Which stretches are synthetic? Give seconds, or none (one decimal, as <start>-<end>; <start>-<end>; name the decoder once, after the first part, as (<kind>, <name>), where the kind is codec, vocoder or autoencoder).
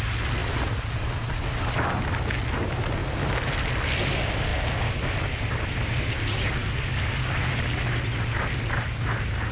none